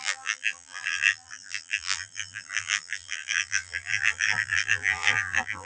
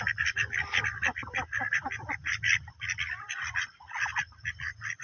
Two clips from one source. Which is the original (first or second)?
second